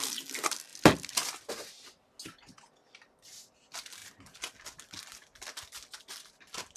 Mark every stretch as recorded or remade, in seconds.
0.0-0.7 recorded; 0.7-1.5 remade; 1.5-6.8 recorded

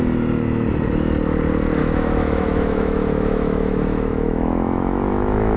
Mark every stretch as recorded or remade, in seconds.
0.0-1.8 recorded; 1.8-5.6 remade